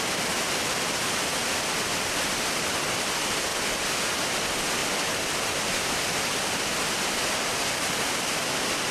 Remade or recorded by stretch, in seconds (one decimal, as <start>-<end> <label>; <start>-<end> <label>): 0.0-8.9 recorded

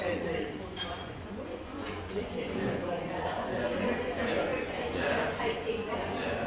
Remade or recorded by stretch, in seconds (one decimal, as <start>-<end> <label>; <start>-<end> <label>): 0.0-6.5 remade